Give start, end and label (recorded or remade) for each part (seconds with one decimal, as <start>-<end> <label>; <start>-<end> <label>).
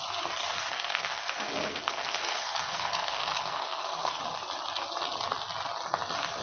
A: 0.0-0.4 recorded; 0.4-4.2 remade; 4.2-6.4 recorded